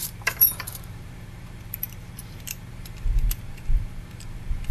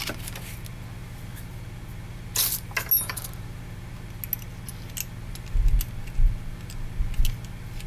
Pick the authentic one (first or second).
second